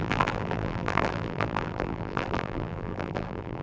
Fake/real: fake